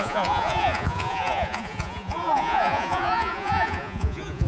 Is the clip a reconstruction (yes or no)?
yes